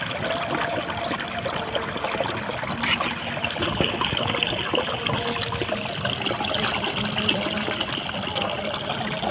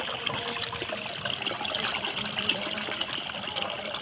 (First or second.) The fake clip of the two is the second